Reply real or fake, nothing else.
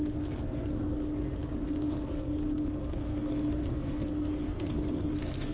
fake